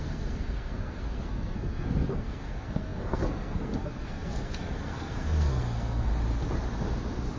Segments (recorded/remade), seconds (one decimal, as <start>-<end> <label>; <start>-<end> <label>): 0.0-6.1 remade; 6.1-7.4 recorded